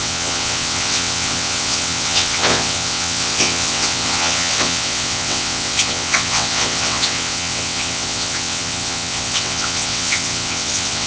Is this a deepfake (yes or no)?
yes